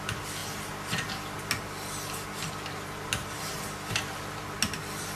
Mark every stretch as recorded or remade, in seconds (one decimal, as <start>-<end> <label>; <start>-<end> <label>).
0.0-5.2 recorded